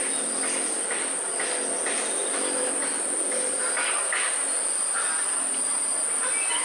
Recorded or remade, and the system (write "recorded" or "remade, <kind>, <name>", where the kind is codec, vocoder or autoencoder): recorded